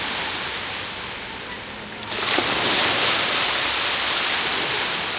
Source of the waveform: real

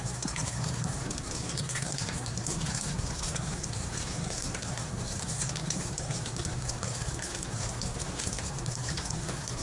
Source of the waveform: fake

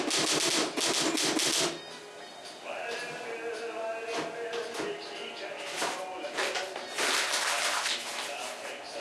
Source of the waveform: real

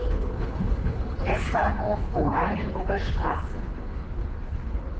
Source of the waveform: fake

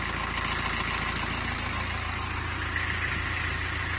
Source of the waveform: real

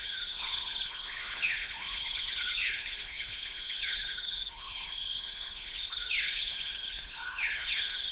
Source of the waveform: fake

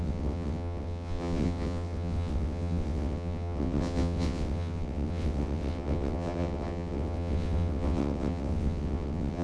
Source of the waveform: fake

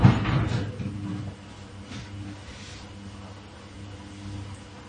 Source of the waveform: real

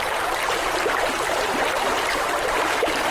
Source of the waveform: fake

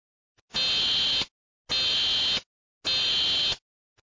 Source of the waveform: real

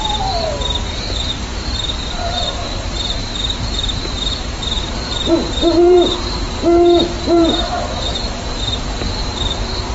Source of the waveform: fake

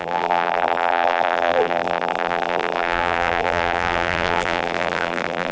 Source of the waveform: fake